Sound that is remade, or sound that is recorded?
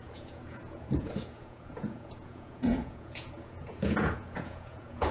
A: remade